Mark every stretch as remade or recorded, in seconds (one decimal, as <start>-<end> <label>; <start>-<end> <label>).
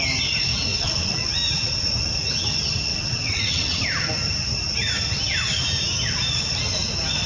0.0-0.7 recorded; 0.7-1.3 remade; 1.3-2.9 recorded; 2.9-3.8 remade; 3.8-7.3 recorded